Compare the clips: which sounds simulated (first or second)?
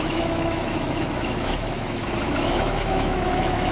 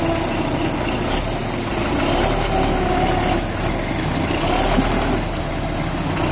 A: first